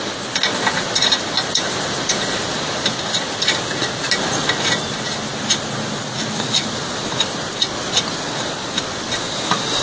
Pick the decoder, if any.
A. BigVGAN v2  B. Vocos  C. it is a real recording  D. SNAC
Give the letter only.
C